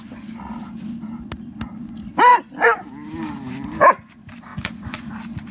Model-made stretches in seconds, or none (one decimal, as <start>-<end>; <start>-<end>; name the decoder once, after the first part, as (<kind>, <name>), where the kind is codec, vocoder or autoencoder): 4.5-5.1 (vocoder, Vocos)